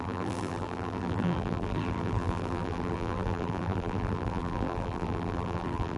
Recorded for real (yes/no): no